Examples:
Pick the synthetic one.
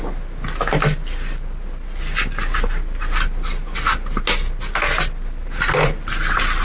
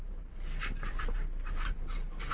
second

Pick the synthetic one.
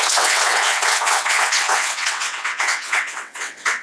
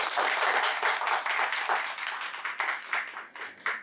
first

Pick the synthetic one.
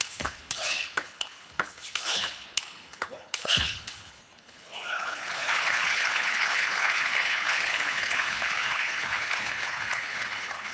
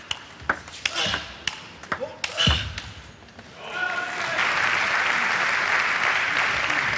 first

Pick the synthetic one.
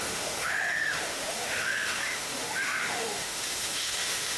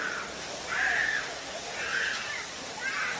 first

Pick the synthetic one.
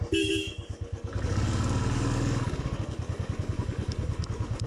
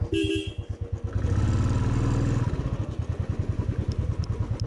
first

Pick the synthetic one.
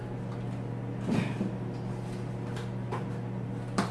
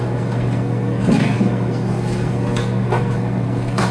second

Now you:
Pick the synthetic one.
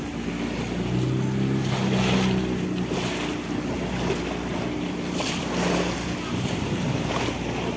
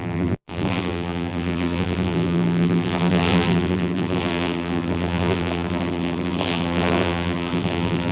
second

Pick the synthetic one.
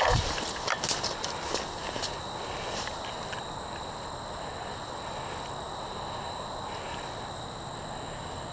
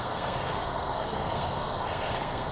second